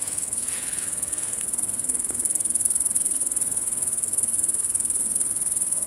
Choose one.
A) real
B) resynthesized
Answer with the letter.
B